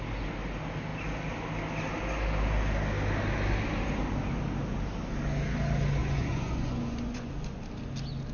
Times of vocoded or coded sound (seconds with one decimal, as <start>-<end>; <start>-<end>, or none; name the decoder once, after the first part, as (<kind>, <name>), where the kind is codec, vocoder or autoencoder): 6.0-7.6 (vocoder, Vocos)